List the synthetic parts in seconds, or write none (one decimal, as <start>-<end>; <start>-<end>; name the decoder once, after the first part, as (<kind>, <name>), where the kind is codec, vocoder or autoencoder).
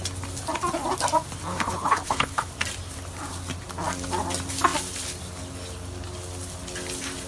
1.5-2.5 (codec, HILCodec)